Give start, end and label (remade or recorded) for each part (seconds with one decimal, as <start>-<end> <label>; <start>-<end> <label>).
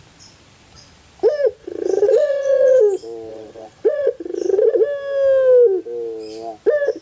0.0-1.6 recorded; 1.6-2.8 remade; 2.8-3.3 recorded; 3.3-4.6 remade; 4.6-7.0 recorded